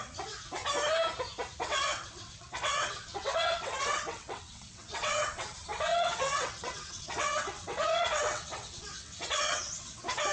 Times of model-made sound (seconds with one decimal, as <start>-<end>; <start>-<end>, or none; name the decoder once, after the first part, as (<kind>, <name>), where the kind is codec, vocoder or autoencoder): 0.0-0.6 (vocoder, WaveNeXt); 1.6-10.3